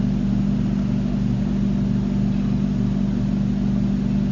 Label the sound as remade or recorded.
recorded